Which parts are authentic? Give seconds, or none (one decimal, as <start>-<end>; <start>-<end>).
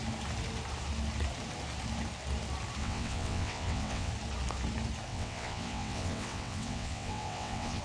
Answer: 0.0-2.8; 4.1-5.1